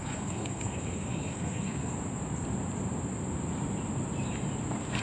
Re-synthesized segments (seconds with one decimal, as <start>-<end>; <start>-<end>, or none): 0.0-1.9